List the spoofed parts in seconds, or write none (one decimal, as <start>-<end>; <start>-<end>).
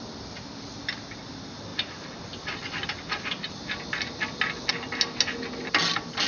none